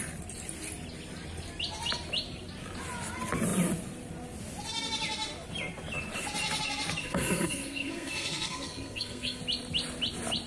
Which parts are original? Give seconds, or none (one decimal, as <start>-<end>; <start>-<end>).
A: 0.0-7.0; 9.4-10.5